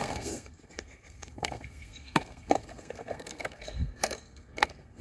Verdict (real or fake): fake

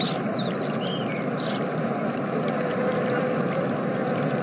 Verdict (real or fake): real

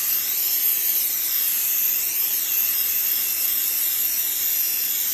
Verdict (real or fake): real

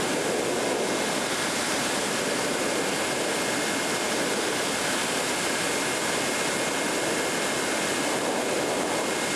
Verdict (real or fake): real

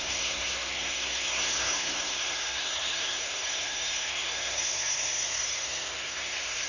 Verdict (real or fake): fake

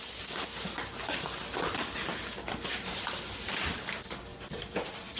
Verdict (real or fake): real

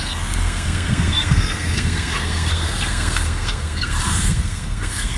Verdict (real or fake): fake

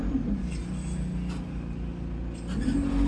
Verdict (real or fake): real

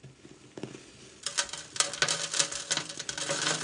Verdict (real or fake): real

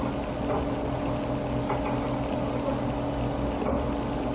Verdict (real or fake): real